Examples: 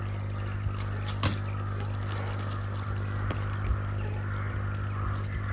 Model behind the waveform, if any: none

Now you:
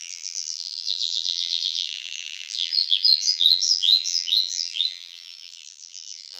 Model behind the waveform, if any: vocoder, BigVGAN v2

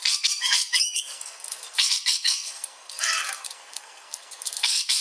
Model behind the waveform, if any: codec, SNAC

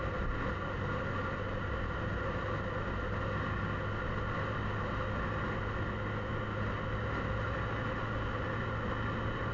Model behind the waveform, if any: none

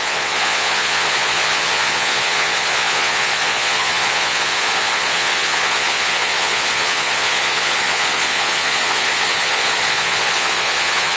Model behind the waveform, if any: vocoder, Vocos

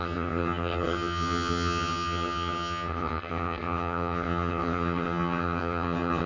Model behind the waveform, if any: vocoder, HiFi-GAN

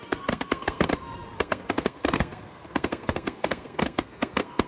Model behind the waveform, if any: codec, SNAC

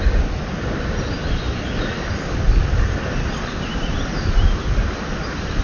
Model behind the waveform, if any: none